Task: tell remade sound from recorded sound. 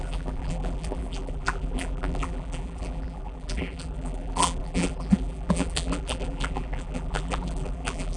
remade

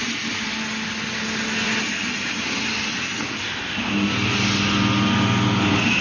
recorded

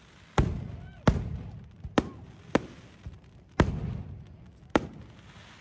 recorded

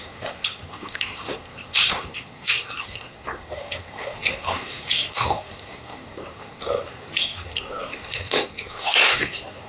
remade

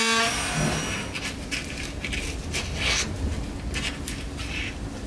recorded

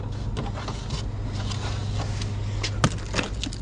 recorded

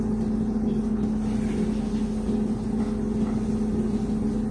recorded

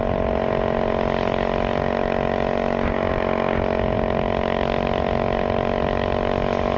recorded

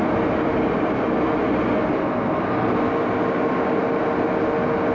recorded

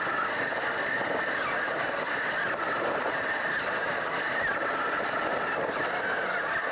recorded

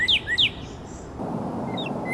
recorded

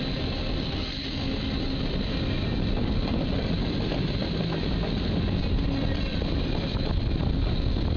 recorded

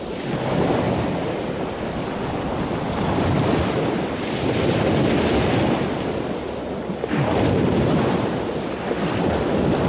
recorded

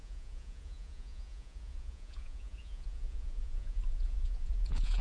remade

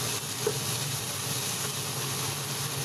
recorded